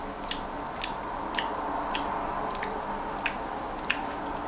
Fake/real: real